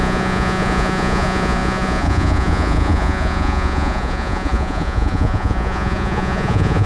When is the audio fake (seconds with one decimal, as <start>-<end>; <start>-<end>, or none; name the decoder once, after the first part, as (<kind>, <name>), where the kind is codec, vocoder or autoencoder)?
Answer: 0.0-6.9 (vocoder, Vocos)